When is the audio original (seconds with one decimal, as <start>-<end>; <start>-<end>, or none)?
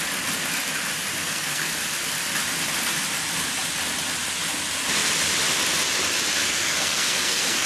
0.0-1.2; 1.7-6.4